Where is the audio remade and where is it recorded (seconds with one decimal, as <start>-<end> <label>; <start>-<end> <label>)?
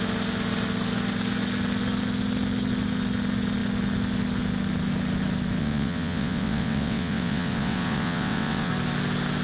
0.0-5.6 recorded; 5.6-8.7 remade; 8.7-9.4 recorded